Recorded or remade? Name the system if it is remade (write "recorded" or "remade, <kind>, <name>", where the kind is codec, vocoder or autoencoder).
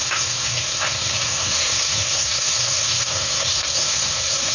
remade, codec, SNAC